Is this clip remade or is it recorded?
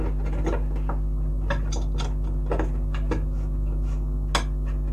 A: recorded